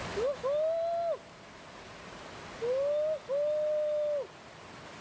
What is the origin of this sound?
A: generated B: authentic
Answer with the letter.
B